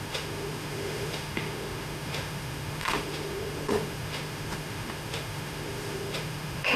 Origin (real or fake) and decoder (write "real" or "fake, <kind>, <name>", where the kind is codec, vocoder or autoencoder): fake, autoencoder, DAC-VAE